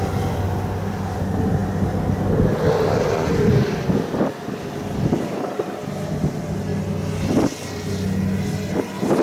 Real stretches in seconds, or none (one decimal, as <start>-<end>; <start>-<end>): 0.0-9.2